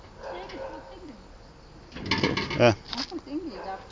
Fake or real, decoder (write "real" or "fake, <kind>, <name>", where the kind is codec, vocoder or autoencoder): real